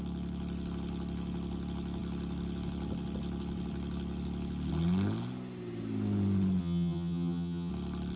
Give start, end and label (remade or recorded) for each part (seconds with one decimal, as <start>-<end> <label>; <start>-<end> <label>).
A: 0.0-6.6 recorded; 6.6-7.7 remade; 7.7-8.2 recorded